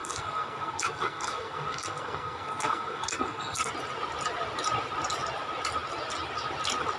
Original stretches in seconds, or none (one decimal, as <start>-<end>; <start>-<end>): 3.7-7.0